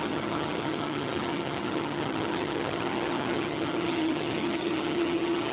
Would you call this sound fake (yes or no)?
yes